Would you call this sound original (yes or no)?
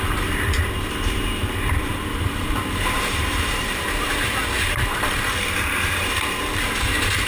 no